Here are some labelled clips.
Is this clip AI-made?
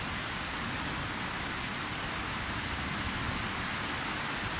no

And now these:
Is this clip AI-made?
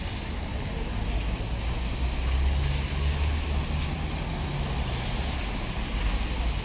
no